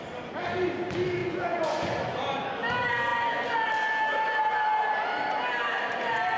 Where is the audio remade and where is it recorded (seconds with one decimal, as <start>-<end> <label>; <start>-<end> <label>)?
0.0-1.2 recorded; 1.2-2.0 remade; 2.0-6.4 recorded